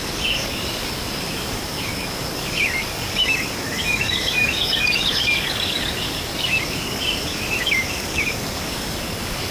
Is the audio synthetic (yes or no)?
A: yes